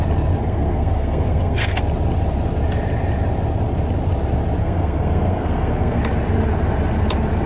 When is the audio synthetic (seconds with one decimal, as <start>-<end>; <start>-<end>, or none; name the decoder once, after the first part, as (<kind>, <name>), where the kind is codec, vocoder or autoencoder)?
0.4-1.8 (codec, SNAC); 4.6-6.0